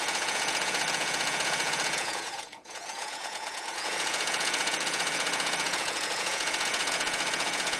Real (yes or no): no